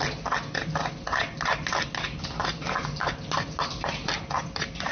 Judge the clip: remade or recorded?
recorded